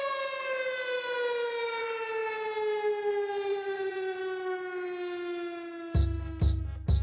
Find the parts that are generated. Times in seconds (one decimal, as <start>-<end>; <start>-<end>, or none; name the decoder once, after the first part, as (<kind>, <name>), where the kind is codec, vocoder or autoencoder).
3.5-4.2 (vocoder, Vocos)